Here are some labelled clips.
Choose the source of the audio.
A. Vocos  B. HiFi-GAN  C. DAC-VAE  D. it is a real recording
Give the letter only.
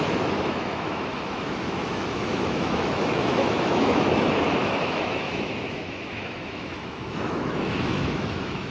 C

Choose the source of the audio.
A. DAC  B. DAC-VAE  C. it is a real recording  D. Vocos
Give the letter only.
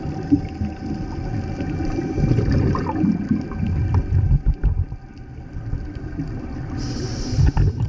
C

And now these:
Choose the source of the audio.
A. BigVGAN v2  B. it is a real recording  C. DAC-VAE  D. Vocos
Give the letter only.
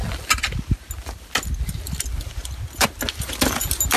B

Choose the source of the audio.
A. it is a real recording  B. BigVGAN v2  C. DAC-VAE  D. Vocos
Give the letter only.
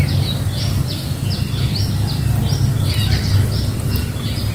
A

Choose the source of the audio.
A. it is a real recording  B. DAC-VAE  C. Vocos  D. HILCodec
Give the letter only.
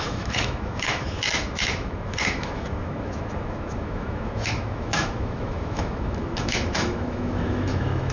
B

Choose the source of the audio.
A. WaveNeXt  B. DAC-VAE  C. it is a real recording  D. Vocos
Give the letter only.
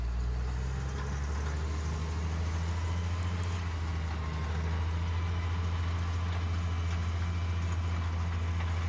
C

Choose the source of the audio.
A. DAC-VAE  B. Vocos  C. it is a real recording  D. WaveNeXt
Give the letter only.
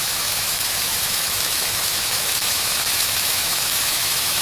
A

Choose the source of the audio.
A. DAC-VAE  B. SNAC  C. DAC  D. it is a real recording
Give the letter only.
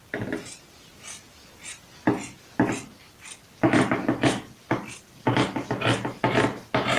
D